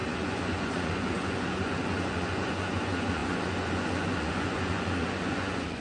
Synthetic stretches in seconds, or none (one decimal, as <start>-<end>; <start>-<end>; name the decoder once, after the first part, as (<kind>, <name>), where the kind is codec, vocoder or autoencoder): 0.0-5.8 (vocoder, Vocos)